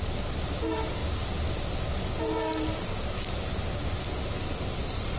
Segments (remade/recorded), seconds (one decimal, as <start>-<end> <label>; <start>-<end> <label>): 0.0-5.2 recorded